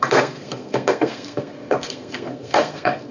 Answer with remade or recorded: remade